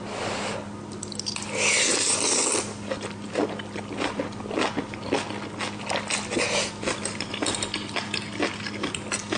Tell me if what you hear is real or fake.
real